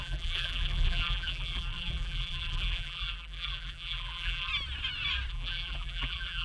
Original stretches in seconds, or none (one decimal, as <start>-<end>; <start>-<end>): 4.5-5.3

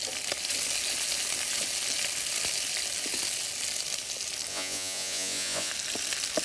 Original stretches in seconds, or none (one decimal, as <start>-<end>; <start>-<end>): 0.0-4.5; 5.7-6.4

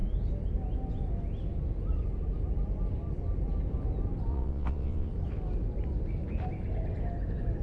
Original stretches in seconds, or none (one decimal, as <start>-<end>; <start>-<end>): 0.0-4.3; 5.1-7.6